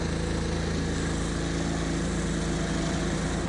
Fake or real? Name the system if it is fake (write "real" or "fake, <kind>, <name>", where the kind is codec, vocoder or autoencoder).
real